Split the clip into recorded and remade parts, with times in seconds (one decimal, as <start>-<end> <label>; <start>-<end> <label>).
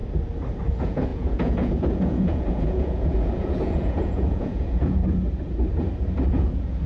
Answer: 0.0-0.7 recorded; 0.7-5.0 remade; 5.0-6.3 recorded; 6.3-6.9 remade